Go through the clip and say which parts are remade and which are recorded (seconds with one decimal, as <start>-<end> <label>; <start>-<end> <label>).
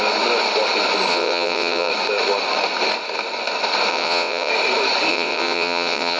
0.0-1.1 recorded; 1.1-1.9 remade; 1.9-3.9 recorded; 3.9-4.5 remade; 4.5-5.1 recorded; 5.1-6.2 remade